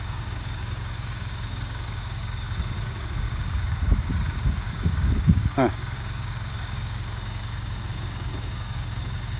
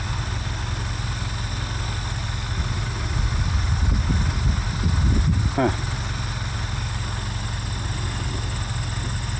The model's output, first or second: first